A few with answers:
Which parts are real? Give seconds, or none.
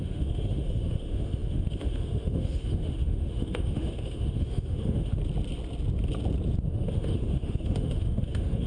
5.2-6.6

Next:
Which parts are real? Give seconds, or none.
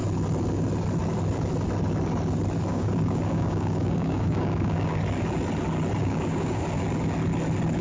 0.0-2.7; 5.0-6.0; 6.6-7.8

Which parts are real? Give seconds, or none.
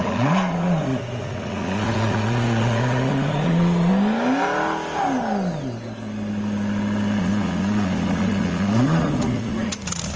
3.9-7.2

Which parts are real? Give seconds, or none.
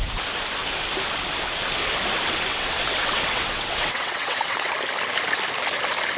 0.0-2.5; 4.7-6.2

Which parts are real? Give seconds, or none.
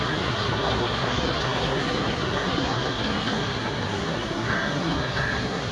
none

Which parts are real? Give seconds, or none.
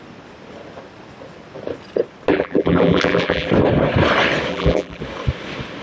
0.0-2.3; 3.5-4.5; 5.0-5.8